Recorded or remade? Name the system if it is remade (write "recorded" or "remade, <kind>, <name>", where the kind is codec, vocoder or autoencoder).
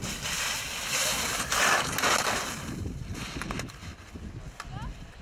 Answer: recorded